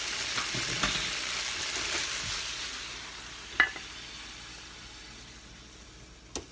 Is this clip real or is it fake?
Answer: real